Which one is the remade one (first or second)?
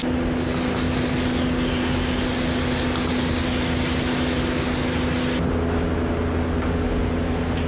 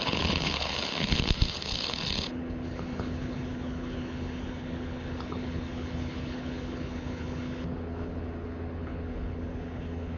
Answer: second